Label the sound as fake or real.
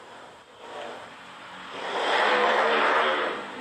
fake